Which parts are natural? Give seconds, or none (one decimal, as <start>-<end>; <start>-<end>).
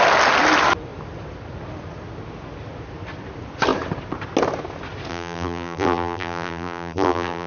0.0-5.1